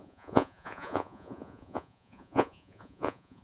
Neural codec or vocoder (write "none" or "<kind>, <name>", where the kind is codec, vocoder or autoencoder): vocoder, Vocos